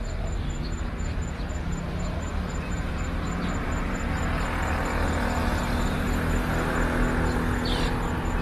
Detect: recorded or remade recorded